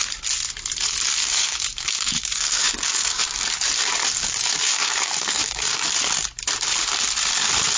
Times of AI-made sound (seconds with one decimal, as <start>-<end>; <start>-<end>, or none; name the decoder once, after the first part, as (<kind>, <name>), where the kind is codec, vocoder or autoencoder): 1.2-3.4 (codec, DAC); 4.2-5.8